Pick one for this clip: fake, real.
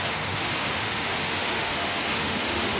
fake